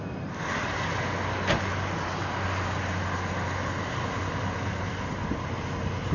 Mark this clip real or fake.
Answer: real